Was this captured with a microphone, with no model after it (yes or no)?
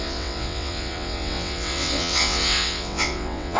no